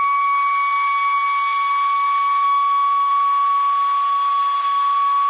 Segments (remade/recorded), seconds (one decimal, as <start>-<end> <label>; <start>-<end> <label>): 0.0-5.3 recorded